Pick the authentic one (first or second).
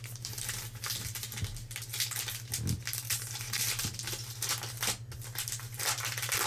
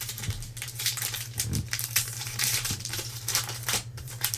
first